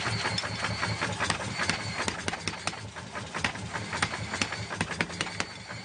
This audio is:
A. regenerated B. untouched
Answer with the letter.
B